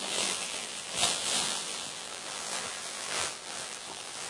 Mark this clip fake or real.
fake